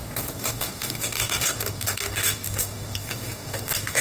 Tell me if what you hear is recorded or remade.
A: remade